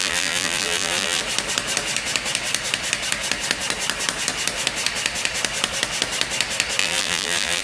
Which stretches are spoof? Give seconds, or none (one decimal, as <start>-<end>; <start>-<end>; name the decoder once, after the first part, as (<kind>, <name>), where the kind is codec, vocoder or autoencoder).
0.0-1.2 (vocoder, BigVGAN v2); 6.8-7.6